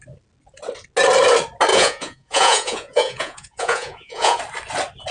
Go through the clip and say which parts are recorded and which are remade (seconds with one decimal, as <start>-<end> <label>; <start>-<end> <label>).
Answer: 0.0-1.7 recorded; 1.7-4.4 remade; 4.4-5.1 recorded